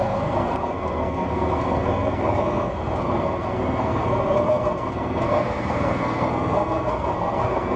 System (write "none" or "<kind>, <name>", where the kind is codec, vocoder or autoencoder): codec, SNAC